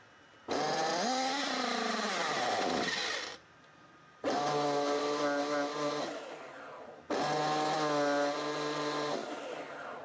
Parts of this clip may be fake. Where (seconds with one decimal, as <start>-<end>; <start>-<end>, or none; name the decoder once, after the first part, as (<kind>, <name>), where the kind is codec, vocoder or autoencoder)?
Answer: none